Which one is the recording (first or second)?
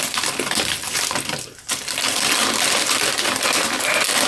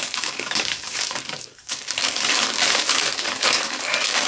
first